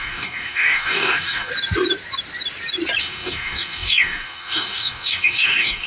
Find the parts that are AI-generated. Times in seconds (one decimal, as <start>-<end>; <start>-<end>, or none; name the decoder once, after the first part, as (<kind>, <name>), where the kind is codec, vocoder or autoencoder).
0.0-1.5 (codec, DAC); 3.0-5.9